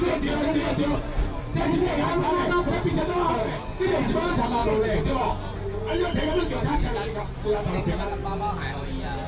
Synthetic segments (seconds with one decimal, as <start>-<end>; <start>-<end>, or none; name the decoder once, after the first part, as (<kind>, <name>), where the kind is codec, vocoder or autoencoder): none